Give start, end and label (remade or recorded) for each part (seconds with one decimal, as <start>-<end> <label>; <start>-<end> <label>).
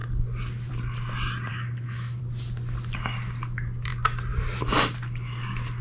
0.0-1.5 recorded; 1.5-2.2 remade; 2.2-5.8 recorded